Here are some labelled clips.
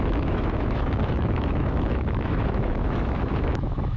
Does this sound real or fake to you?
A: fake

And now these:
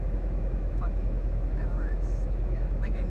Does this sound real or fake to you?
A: fake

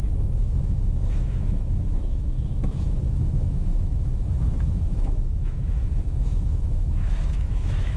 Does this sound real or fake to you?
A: fake